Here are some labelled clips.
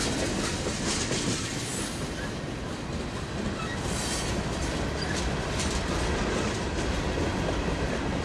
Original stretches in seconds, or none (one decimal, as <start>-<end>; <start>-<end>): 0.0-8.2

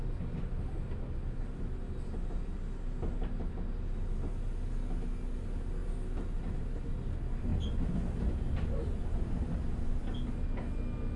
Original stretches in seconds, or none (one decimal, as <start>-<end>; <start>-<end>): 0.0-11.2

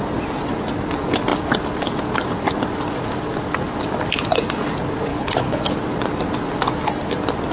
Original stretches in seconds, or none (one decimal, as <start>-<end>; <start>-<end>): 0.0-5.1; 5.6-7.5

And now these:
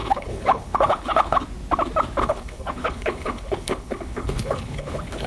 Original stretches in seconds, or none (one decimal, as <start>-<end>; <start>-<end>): 1.4-2.2

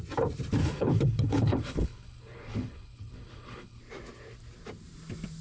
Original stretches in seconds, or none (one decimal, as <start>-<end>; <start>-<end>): 0.0-0.6; 3.8-5.4

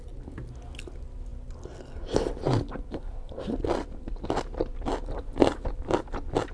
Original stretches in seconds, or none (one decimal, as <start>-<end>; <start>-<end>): 0.0-6.5